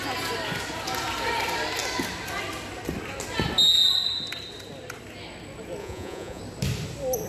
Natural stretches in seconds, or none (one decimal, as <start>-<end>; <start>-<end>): 0.0-5.8; 6.4-7.3